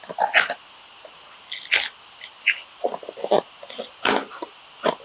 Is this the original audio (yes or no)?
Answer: yes